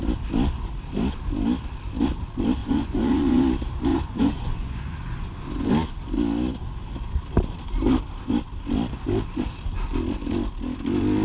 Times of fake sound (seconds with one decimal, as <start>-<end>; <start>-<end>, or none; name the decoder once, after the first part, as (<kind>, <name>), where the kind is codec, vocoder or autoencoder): 2.6-3.4 (vocoder, Vocos); 3.9-5.7

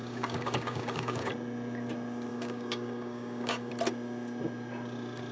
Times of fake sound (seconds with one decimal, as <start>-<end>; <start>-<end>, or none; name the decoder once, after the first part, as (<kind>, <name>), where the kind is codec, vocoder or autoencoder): 0.0-1.3 (codec, DAC); 2.3-3.7

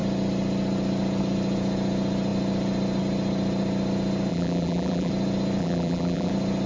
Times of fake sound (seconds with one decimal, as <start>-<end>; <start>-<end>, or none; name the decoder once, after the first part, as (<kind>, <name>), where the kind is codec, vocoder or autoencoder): 4.3-5.1 (vocoder, BigVGAN v2); 5.6-6.3

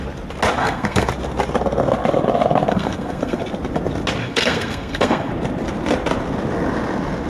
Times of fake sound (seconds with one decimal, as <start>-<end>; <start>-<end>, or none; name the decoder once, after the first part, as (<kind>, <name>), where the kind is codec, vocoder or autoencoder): 0.6-1.1 (codec, SNAC); 2.7-3.4; 4.2-5.3

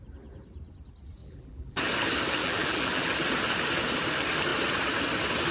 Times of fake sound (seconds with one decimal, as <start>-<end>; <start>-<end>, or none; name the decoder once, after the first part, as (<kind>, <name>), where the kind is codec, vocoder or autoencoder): 1.2-1.8 (vocoder, BigVGAN v2); 2.4-3.1

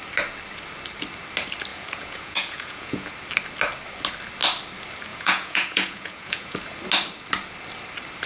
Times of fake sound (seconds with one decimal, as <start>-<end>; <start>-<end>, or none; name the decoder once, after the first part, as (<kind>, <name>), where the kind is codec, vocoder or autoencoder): 1.7-3.1 (vocoder, Vocos); 5.1-6.6

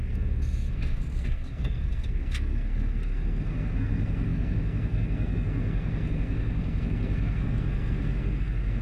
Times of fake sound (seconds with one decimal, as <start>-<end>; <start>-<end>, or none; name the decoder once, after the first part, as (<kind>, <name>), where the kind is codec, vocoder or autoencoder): 0.0-8.8 (codec, SNAC)

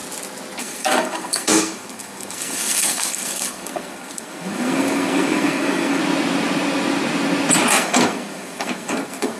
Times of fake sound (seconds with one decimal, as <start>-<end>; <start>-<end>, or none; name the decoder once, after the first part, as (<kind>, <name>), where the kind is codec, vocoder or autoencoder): 0.6-6.0 (codec, SNAC); 7.7-9.4